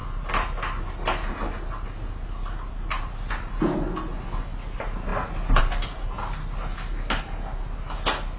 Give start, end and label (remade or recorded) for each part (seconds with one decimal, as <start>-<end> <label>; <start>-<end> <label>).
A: 0.0-8.4 recorded